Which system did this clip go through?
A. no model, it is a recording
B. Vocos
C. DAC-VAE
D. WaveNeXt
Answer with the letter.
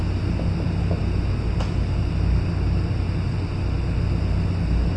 A